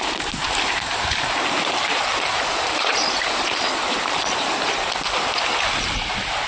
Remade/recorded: recorded